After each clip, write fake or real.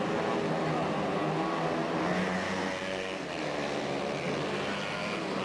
real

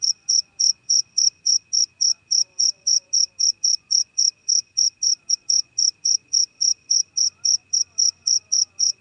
fake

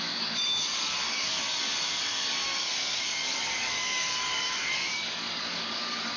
fake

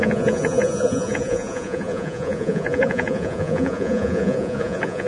fake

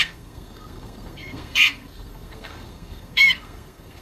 fake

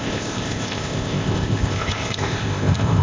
fake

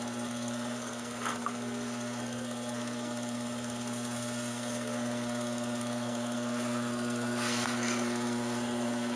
fake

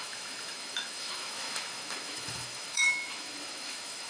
fake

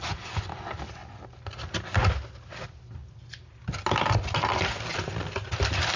real